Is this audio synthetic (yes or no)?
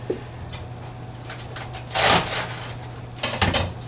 no